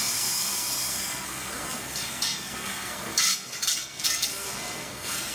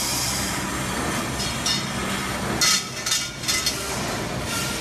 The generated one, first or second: first